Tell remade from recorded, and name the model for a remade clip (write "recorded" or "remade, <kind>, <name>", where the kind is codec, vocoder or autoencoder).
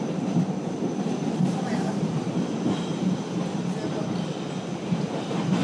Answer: recorded